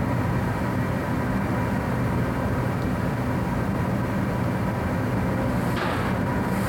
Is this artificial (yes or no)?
no